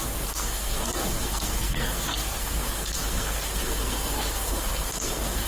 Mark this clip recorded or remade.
remade